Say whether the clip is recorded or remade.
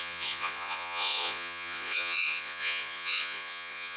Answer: remade